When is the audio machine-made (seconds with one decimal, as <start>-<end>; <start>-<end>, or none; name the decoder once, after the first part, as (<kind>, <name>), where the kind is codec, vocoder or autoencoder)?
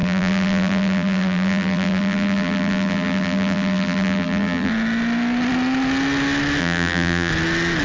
0.0-4.7 (vocoder, BigVGAN v2); 6.6-7.3